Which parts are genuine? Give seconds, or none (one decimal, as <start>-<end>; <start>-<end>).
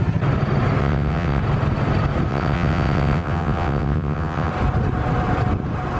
0.0-0.8; 1.4-2.3; 4.5-6.0